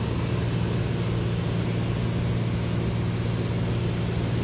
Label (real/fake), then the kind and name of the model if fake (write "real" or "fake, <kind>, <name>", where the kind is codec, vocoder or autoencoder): real